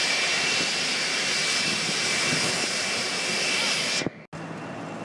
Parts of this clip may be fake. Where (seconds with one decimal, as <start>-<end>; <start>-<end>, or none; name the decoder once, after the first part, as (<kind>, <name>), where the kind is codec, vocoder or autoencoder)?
none